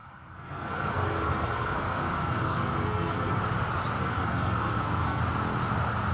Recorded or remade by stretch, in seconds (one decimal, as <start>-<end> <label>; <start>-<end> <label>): 0.0-3.4 remade; 3.4-4.0 recorded; 4.0-5.2 remade; 5.2-6.1 recorded